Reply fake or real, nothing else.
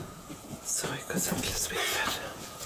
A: fake